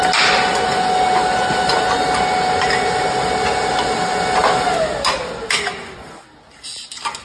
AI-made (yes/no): no